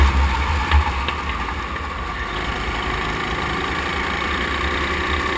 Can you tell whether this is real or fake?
real